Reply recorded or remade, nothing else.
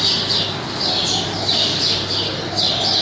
recorded